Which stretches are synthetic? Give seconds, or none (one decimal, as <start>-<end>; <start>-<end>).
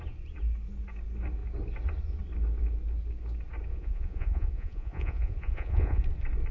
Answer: 3.7-6.0